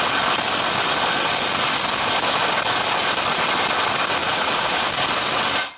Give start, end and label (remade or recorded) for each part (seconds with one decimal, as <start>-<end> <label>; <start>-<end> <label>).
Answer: 0.0-4.2 recorded; 4.2-4.9 remade; 4.9-5.8 recorded